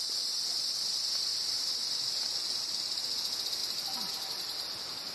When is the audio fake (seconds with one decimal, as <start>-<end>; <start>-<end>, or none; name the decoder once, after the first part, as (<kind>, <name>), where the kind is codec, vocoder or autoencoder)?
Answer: none

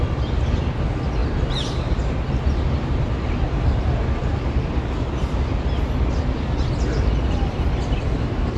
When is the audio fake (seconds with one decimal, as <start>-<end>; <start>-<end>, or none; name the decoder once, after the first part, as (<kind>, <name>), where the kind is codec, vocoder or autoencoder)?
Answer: none

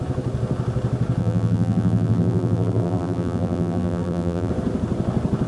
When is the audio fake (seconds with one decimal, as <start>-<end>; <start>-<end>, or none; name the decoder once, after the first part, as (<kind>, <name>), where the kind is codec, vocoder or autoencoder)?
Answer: 1.2-4.5 (vocoder, BigVGAN v2)

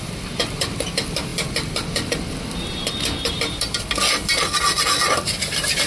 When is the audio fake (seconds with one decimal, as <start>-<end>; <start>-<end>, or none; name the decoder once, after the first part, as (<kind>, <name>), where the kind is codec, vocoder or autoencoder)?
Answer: 0.0-5.9 (vocoder, BigVGAN v2)

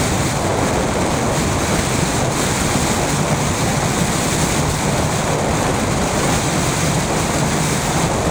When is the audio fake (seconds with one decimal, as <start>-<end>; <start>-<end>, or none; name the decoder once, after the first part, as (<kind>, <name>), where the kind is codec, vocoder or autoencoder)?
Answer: 0.0-0.5 (vocoder, BigVGAN v2); 5.5-8.3

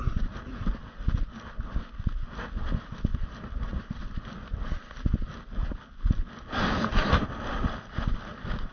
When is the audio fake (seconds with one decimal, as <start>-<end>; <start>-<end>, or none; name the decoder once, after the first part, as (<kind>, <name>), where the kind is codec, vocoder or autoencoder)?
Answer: none